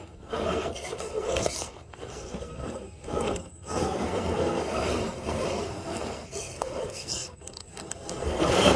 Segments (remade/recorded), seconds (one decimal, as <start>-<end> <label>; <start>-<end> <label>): 0.0-8.8 remade